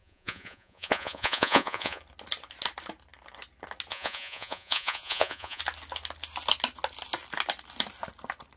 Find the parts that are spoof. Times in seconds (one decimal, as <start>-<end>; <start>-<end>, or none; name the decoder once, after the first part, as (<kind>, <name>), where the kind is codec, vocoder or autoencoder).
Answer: 0.0-2.0 (vocoder, Vocos); 3.9-5.6